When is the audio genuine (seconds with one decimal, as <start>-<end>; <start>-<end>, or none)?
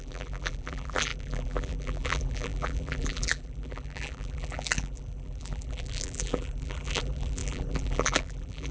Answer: none